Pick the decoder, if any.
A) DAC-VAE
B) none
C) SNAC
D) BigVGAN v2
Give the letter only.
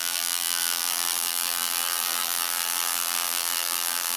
D